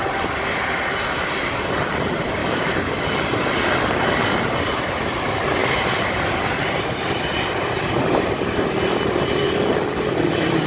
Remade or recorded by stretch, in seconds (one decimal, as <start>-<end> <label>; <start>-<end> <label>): 0.0-2.4 recorded; 2.4-2.9 remade; 2.9-10.7 recorded